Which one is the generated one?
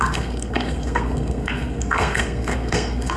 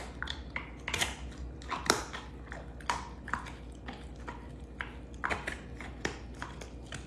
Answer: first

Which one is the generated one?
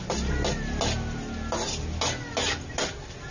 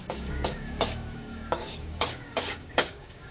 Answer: second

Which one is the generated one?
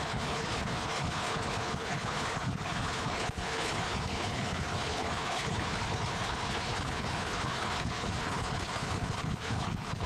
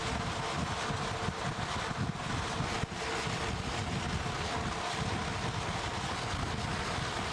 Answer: first